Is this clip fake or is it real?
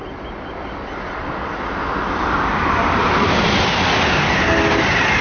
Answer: real